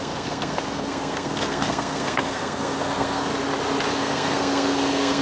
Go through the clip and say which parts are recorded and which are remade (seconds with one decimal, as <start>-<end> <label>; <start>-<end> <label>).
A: 0.0-3.3 remade; 3.3-3.9 recorded; 3.9-5.2 remade